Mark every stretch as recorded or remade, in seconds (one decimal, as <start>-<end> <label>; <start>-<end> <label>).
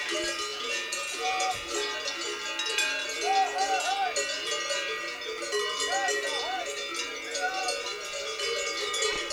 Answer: 0.0-0.5 recorded; 0.5-1.5 remade; 1.5-9.3 recorded